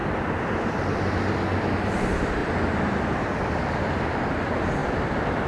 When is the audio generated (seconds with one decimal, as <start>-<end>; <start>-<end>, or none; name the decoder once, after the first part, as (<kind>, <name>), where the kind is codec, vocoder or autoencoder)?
0.0-1.3 (vocoder, BigVGAN v2); 2.4-3.6; 4.8-5.5